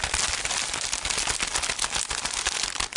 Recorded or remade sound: recorded